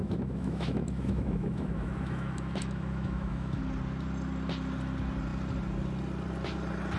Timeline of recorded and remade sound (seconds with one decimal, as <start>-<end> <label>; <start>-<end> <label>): 0.0-3.6 remade; 3.6-7.0 recorded